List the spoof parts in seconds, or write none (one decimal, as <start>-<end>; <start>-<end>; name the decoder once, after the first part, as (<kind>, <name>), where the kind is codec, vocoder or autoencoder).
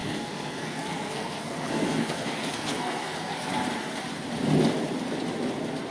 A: 0.0-3.5 (codec, SNAC)